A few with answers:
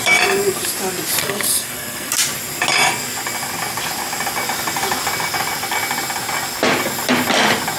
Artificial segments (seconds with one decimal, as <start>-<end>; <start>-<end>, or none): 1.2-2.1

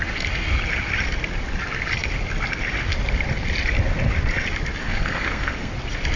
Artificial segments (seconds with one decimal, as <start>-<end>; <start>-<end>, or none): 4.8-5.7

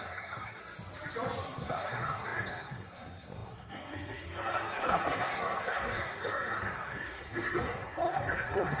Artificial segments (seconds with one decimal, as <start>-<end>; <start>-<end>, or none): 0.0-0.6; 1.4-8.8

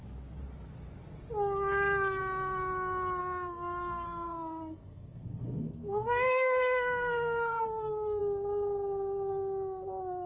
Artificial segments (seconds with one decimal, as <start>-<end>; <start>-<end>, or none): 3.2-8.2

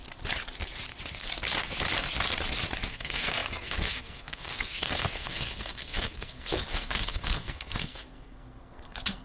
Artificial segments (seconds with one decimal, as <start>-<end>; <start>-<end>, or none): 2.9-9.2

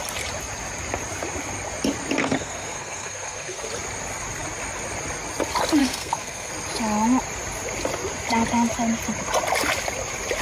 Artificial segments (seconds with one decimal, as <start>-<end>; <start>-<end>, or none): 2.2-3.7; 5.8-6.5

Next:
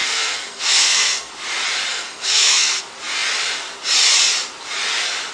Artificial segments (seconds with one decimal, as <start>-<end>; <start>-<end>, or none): 0.0-1.3; 1.9-2.8